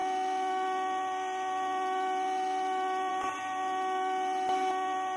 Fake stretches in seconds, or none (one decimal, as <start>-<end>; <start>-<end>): none